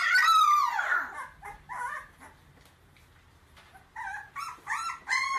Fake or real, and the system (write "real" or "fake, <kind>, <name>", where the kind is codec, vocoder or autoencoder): real